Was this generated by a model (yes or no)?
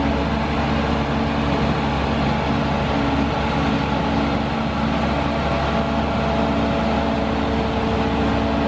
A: no